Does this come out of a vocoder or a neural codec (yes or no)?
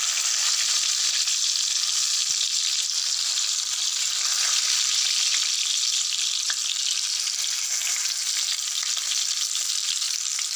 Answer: no